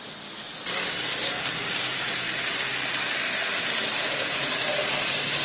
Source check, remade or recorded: recorded